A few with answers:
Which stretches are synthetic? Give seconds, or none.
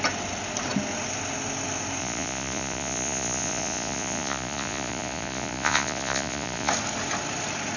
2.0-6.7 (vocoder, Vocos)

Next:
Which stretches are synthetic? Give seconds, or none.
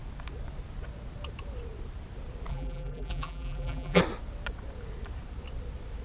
2.5-4.0 (vocoder, BigVGAN v2)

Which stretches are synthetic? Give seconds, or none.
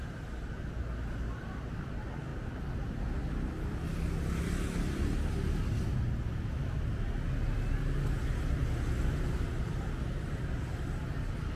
none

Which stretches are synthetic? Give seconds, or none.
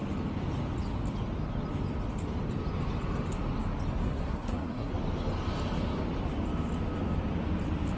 4.0-4.9 (codec, SNAC)